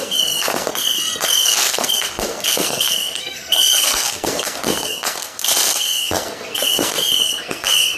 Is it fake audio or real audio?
fake